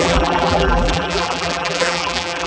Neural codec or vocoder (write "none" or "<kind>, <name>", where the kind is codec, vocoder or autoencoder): vocoder, BigVGAN v2